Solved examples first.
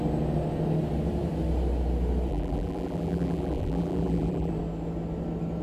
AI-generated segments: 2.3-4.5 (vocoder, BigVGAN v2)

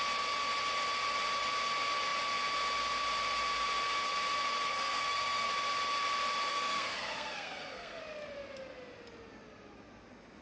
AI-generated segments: 4.7-5.5 (codec, SNAC); 6.5-8.0

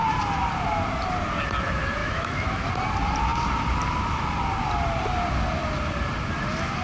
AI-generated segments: 2.0-2.7 (autoencoder, DAC-VAE)

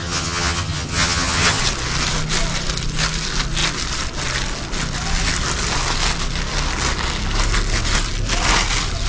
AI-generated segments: 0.0-1.6 (vocoder, HiFi-GAN)

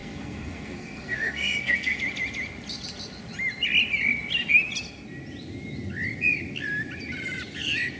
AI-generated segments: 0.0-2.0 (codec, SNAC)

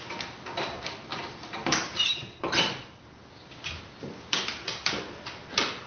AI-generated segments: none